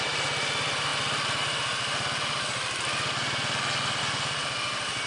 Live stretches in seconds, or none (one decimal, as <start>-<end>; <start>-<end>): 0.0-5.1